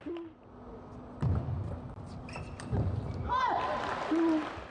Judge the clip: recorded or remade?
recorded